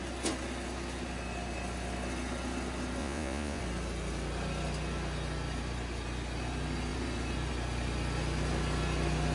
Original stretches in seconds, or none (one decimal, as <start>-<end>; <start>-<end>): 0.0-3.0; 3.6-9.3